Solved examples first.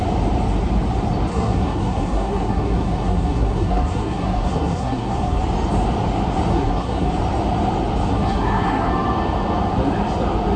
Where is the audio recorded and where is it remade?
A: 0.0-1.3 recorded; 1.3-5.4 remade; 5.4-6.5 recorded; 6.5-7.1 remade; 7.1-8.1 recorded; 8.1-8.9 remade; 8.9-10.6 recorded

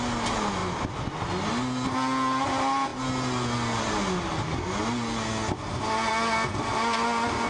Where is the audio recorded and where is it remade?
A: 0.0-7.5 recorded

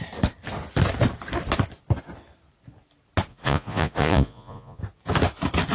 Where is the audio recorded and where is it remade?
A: 0.0-3.3 recorded; 3.3-4.8 remade; 4.8-5.7 recorded

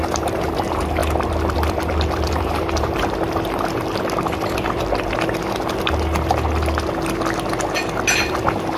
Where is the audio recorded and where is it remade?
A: 0.0-1.0 recorded; 1.0-5.2 remade; 5.2-8.8 recorded

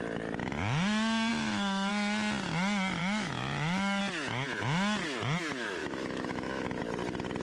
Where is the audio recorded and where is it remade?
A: 0.0-1.3 recorded; 1.3-1.9 remade; 1.9-3.0 recorded; 3.0-4.0 remade; 4.0-5.8 recorded; 5.8-6.8 remade; 6.8-7.4 recorded

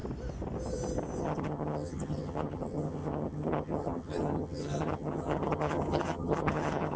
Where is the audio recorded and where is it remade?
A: 0.0-1.2 recorded; 1.2-7.0 remade

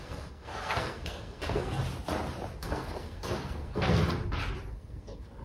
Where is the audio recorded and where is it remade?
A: 0.0-1.8 remade; 1.8-2.6 recorded; 2.6-4.0 remade; 4.0-4.7 recorded; 4.7-5.4 remade

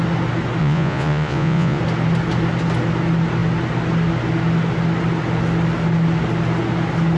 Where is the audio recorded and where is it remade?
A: 0.0-0.6 recorded; 0.6-1.8 remade; 1.8-7.2 recorded